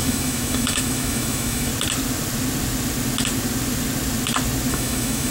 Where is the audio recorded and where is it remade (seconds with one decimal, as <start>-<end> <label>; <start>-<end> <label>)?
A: 0.0-1.7 remade; 1.7-4.7 recorded; 4.7-5.3 remade